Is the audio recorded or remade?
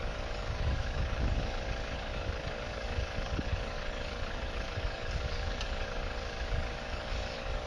remade